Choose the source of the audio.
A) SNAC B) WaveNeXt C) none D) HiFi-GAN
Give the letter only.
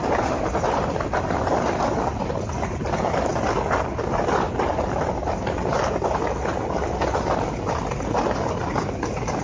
C